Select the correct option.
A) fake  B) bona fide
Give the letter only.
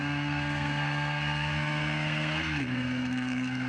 A